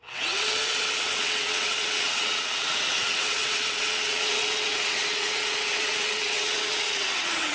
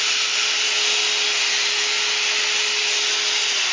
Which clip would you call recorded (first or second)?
second